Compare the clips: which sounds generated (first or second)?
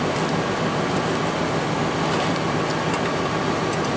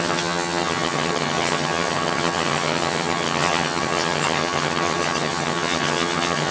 second